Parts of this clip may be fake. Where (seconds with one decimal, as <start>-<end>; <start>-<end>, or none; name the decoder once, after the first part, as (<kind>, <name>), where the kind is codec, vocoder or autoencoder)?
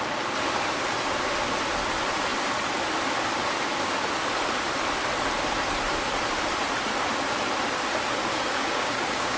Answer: 8.3-9.4 (codec, DAC)